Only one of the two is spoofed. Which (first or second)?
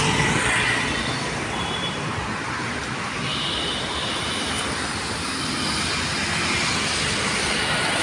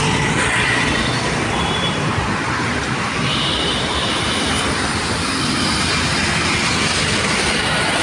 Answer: second